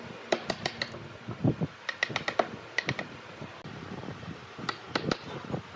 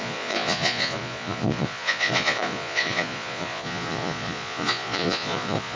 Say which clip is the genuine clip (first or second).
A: first